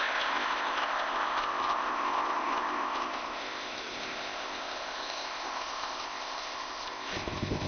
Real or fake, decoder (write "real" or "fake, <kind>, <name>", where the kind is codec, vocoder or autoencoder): fake, codec, ZipCodec